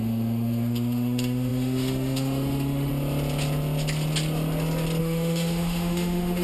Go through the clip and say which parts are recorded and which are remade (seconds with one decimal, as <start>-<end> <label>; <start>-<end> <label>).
0.0-2.9 remade; 2.9-5.0 recorded; 5.0-6.4 remade